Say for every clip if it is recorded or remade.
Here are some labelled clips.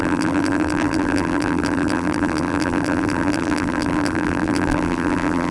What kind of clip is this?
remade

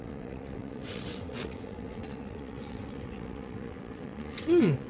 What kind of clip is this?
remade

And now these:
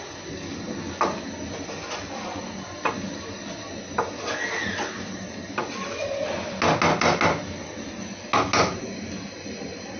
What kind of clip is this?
recorded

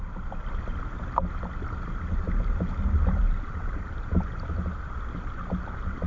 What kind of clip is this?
recorded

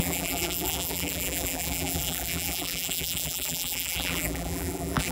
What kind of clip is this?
remade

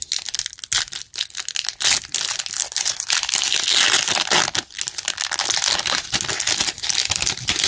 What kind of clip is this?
recorded